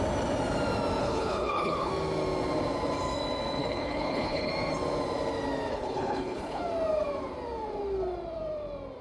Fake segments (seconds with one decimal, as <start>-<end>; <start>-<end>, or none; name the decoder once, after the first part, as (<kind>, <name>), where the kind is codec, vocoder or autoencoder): 1.0-1.9 (codec, HILCodec); 3.6-4.5; 5.7-6.6